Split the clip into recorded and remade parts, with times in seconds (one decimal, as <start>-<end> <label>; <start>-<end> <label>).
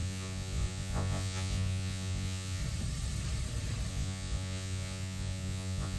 0.0-2.6 remade; 2.6-3.9 recorded; 3.9-6.0 remade